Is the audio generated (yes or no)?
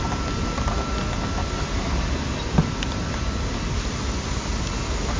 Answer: no